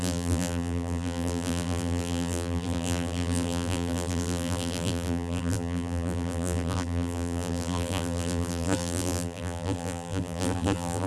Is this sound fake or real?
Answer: fake